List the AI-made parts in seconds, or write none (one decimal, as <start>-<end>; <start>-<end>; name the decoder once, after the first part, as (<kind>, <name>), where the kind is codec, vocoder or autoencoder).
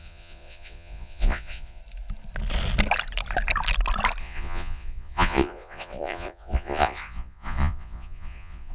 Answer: 0.0-1.8 (vocoder, Vocos); 4.2-8.7